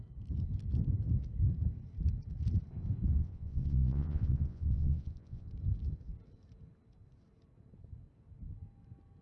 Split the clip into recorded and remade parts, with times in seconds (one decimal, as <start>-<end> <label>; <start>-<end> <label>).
0.0-3.2 recorded; 3.2-5.5 remade; 5.5-9.2 recorded